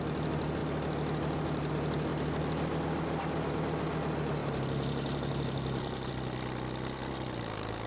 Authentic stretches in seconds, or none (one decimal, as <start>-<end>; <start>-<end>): 0.0-4.4; 6.1-7.9